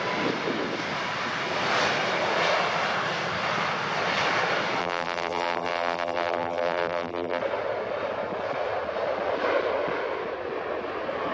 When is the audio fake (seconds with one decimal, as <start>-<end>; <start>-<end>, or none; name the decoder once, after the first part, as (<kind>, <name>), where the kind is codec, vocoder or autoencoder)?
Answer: 4.8-7.4 (vocoder, BigVGAN v2)